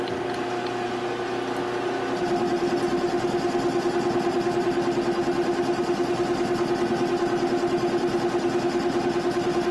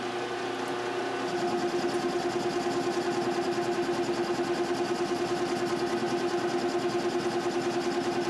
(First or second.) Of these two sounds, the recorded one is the second